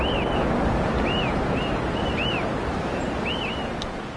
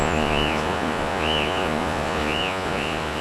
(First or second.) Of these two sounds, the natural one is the first